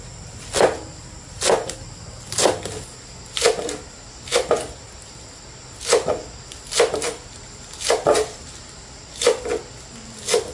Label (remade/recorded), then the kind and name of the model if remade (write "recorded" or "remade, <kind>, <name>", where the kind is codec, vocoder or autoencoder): recorded